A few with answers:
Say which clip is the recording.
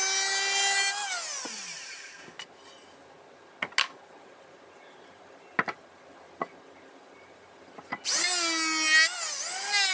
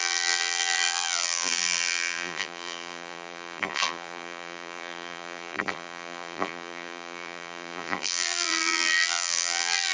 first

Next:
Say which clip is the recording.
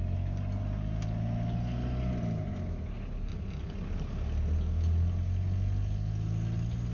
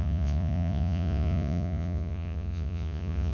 first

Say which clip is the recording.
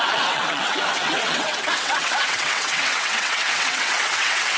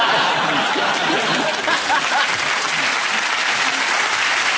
second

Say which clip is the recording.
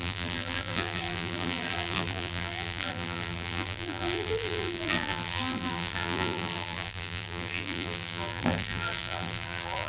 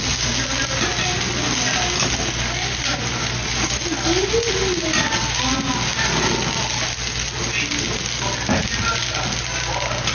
second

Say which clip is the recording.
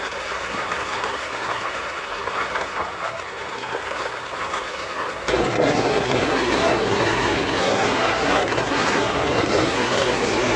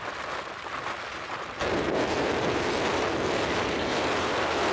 second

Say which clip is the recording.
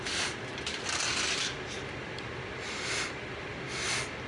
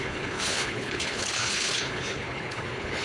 first